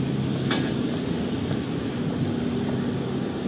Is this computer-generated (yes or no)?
no